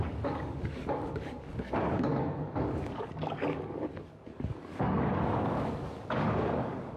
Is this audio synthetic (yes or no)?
yes